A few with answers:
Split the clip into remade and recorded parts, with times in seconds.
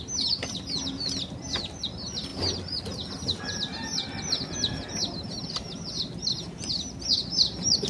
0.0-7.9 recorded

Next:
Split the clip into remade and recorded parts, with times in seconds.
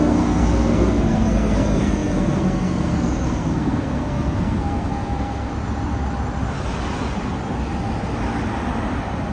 0.0-5.5 remade; 5.5-9.3 recorded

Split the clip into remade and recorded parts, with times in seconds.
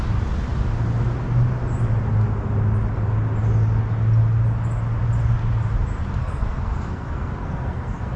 0.0-6.2 recorded; 6.2-8.2 remade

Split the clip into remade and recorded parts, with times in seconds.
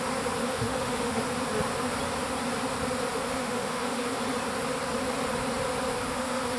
0.0-0.4 recorded; 0.4-1.2 remade; 1.2-3.1 recorded; 3.1-4.2 remade; 4.2-5.9 recorded; 5.9-6.6 remade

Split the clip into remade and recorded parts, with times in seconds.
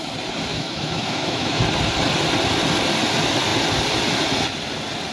0.0-0.5 recorded; 0.5-1.6 remade; 1.6-5.1 recorded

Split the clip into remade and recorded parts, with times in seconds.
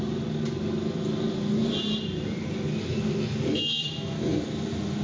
0.0-3.5 recorded; 3.5-4.3 remade; 4.3-5.0 recorded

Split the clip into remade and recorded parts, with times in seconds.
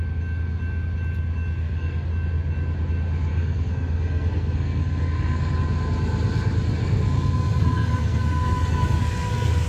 0.0-1.6 recorded; 1.6-2.1 remade; 2.1-3.3 recorded; 3.3-5.5 remade; 5.5-6.8 recorded; 6.8-9.7 remade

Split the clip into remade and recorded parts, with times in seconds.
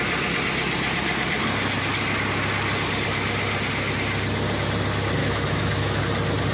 0.0-5.2 recorded; 5.2-6.0 remade; 6.0-6.5 recorded